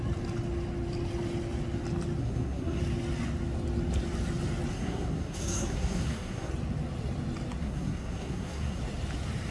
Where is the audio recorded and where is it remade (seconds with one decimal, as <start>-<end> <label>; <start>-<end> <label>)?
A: 0.0-2.2 recorded; 2.2-2.8 remade; 2.8-4.7 recorded; 4.7-6.5 remade; 6.5-7.6 recorded; 7.6-8.8 remade; 8.8-9.5 recorded